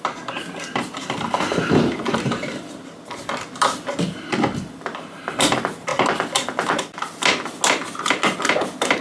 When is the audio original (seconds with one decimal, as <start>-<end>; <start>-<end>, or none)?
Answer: 0.0-9.0